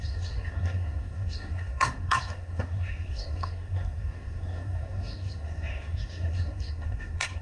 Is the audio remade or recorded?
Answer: remade